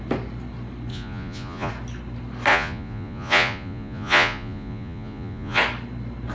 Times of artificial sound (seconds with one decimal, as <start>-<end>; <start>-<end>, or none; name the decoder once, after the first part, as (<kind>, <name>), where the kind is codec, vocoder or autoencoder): 0.9-1.7 (vocoder, Vocos); 2.5-5.6